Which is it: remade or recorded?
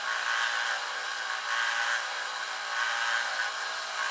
recorded